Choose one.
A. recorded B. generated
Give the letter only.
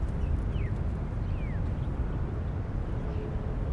A